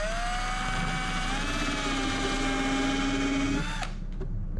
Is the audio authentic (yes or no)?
yes